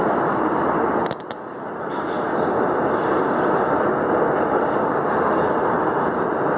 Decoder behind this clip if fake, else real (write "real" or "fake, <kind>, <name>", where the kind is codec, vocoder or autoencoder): real